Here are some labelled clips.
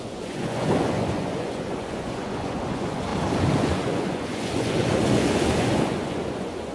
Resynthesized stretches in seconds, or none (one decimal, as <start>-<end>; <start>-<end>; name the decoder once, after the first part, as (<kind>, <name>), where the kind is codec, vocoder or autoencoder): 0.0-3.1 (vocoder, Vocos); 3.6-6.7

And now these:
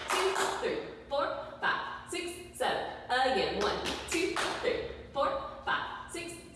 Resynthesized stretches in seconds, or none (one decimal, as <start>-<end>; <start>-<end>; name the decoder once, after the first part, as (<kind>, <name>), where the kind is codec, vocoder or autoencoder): none

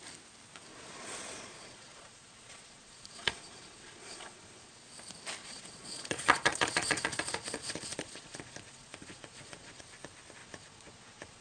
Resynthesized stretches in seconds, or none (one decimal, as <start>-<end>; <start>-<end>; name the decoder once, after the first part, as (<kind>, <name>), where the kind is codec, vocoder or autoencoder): 0.7-4.8 (vocoder, Vocos); 5.4-9.8; 10.4-11.4

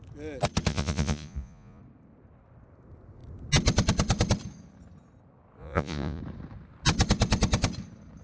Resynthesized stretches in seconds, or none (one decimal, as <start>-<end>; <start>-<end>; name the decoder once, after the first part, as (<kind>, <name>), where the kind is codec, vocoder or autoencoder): 0.7-1.8 (vocoder, Vocos); 5.6-6.2